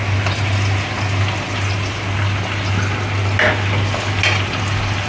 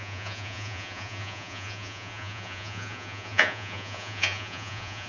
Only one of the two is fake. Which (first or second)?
second